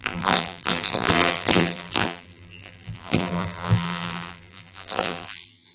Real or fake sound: fake